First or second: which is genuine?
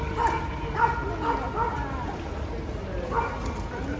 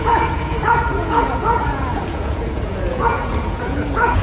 first